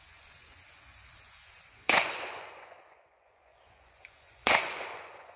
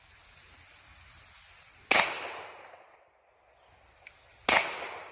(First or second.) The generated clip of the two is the first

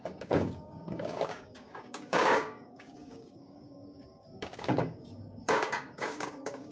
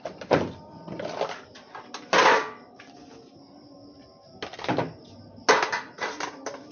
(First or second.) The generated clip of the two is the first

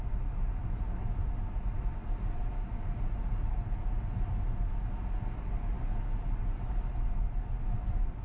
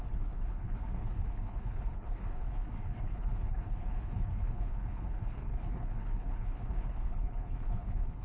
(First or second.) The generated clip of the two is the second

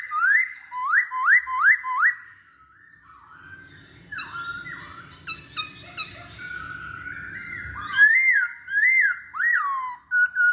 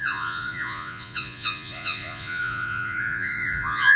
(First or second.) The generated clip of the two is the second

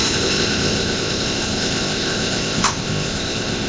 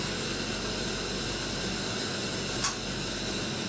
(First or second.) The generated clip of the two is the first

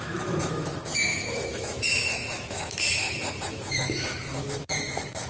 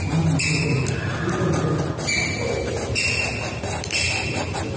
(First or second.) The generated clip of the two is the first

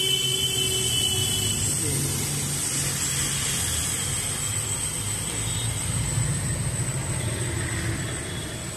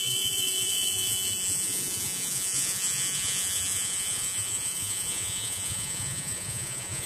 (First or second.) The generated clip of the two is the second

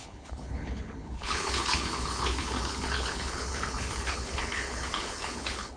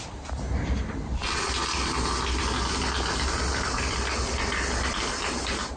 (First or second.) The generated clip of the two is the first